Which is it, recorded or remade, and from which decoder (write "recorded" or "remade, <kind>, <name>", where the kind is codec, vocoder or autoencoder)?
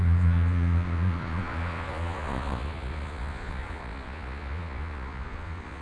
remade, vocoder, Vocos